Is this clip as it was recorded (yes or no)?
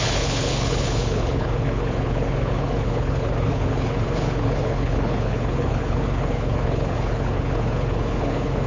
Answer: no